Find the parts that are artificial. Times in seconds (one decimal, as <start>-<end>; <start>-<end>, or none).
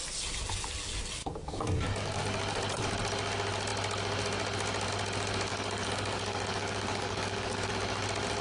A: 1.2-2.2; 5.5-7.7